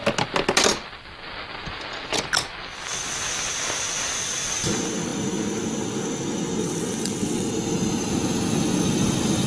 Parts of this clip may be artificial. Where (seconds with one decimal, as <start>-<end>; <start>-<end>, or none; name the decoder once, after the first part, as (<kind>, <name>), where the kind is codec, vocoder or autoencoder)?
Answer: 6.6-7.5 (vocoder, WaveNeXt)